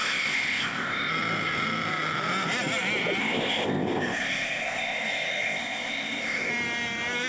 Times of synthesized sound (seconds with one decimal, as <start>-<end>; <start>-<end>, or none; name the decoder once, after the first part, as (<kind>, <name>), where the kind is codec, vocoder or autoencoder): 0.0-1.1 (codec, ZipCodec); 3.2-6.5